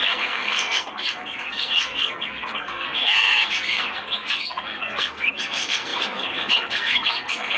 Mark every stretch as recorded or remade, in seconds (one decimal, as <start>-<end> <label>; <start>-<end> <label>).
0.0-7.6 remade